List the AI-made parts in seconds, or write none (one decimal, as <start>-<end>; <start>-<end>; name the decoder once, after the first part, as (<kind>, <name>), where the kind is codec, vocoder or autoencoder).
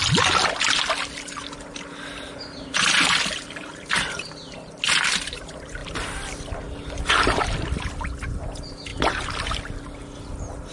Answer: none